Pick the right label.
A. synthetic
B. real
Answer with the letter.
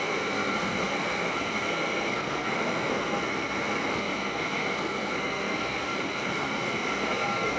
A